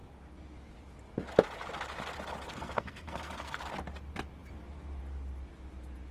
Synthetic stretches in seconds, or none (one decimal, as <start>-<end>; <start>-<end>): 2.5-3.6